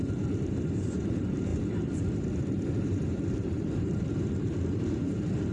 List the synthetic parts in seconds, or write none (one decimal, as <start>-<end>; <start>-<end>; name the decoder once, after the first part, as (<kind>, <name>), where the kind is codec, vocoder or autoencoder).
0.0-5.5 (vocoder, BigVGAN v2)